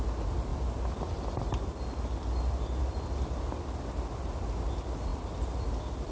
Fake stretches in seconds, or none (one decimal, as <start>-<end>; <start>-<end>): 5.1-5.6